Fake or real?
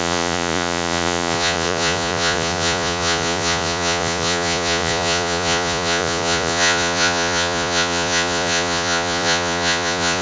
fake